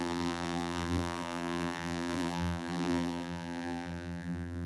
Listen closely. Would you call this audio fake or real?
fake